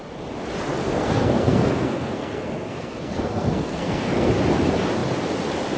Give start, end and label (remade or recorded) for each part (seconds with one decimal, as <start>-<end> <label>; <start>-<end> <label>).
0.0-0.8 recorded; 0.8-4.3 remade; 4.3-5.8 recorded